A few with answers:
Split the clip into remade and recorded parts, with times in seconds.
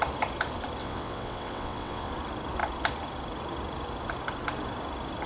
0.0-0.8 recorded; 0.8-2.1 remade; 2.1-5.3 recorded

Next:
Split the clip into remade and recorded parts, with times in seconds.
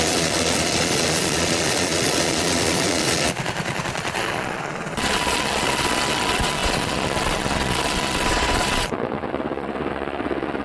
0.0-10.6 remade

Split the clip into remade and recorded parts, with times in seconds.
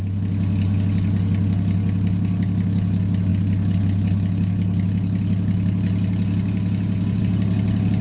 0.0-8.0 recorded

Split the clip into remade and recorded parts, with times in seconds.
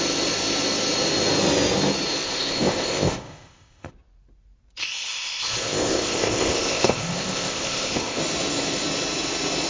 0.0-2.2 recorded; 2.2-3.9 remade; 3.9-4.8 recorded; 4.8-8.2 remade; 8.2-9.7 recorded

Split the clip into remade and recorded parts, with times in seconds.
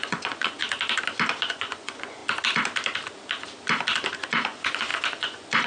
0.0-0.6 remade; 0.6-1.5 recorded; 1.5-2.2 remade; 2.2-4.1 recorded; 4.1-5.7 remade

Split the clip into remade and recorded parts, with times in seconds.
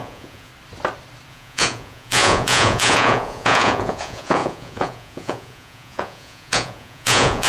0.0-0.5 remade; 0.5-1.3 recorded; 1.3-7.5 remade